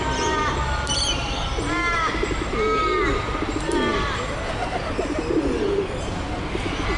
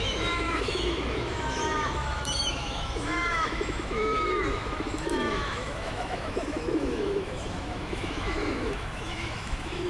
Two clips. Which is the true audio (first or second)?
first